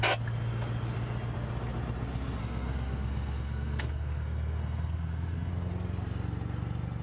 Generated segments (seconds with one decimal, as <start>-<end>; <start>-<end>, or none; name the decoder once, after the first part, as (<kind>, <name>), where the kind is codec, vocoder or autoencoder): 2.4-5.5 (codec, SNAC)